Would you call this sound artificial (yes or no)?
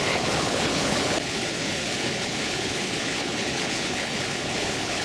yes